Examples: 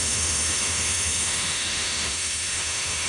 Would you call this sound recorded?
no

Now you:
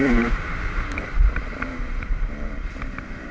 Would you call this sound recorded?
no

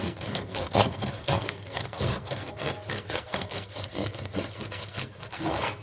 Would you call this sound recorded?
no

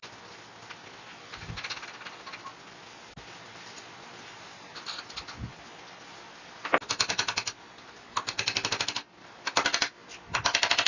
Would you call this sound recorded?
yes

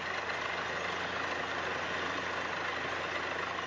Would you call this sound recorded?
yes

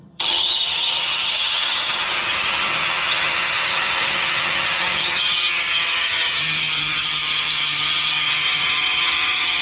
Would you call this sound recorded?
no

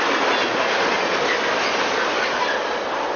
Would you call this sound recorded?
yes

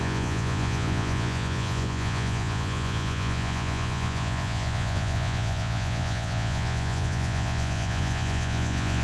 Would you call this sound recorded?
no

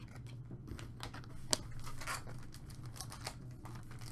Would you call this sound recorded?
yes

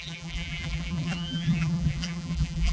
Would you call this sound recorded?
no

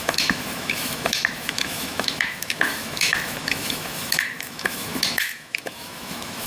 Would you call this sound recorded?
no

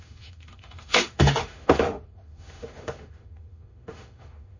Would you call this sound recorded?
no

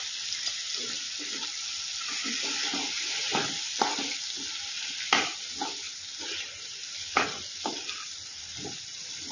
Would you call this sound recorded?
yes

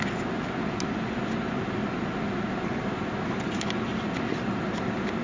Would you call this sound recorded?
yes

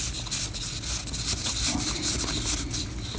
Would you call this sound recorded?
yes